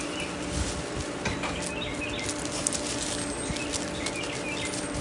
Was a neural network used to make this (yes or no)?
no